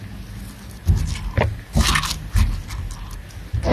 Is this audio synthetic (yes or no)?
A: no